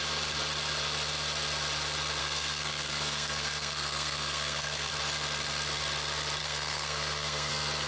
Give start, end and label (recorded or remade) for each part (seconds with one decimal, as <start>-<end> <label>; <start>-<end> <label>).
0.0-2.2 recorded; 2.2-4.9 remade; 4.9-6.4 recorded; 6.4-7.5 remade; 7.5-7.9 recorded